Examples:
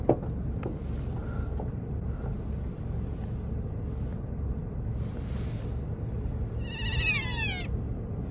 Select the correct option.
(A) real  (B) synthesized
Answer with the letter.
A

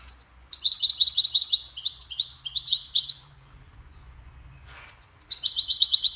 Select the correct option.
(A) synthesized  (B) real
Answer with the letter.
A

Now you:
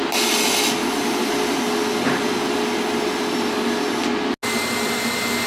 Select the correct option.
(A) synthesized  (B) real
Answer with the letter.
B